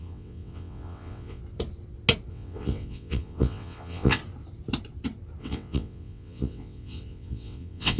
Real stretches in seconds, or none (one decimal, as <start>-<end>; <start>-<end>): 1.4-2.3; 4.2-5.4

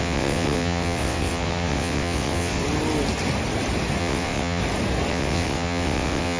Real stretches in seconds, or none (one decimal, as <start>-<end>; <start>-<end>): 2.6-4.0; 4.6-5.1

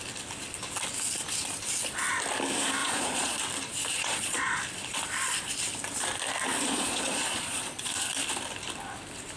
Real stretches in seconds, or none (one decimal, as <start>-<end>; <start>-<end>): 0.0-2.8; 3.4-3.9; 4.6-6.5; 7.9-9.4

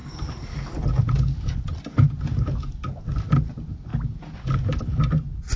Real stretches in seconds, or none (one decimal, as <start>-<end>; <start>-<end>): 0.0-5.6

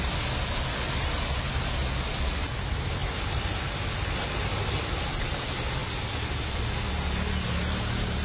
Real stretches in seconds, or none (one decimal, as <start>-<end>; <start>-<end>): 0.0-8.2

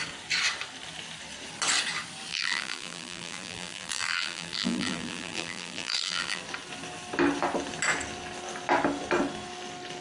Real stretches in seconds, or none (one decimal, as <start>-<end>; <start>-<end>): 0.0-2.3; 6.4-10.0

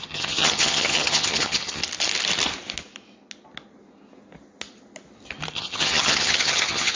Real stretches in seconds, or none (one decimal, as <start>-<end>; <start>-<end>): 1.8-5.5

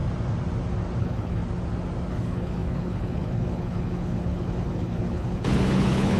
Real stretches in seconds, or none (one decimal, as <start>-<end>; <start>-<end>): 0.0-1.0; 1.4-2.1